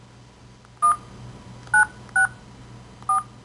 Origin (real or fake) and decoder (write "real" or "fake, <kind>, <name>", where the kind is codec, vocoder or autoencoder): real